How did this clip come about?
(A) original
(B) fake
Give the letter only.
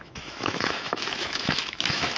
B